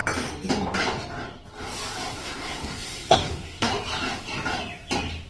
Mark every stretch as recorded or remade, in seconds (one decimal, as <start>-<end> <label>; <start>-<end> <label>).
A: 0.0-2.2 recorded; 2.2-3.7 remade; 3.7-5.3 recorded